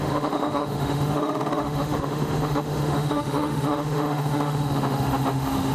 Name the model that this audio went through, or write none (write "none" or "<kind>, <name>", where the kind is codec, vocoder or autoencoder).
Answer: autoencoder, DAC-VAE